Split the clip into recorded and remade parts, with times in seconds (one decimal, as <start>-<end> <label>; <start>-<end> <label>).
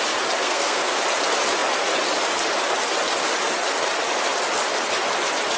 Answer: 0.0-0.4 recorded; 0.4-1.0 remade; 1.0-5.6 recorded